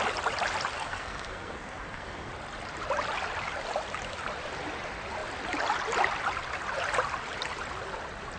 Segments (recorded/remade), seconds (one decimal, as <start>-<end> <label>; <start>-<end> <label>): 0.0-0.7 recorded; 0.7-2.3 remade; 2.3-8.4 recorded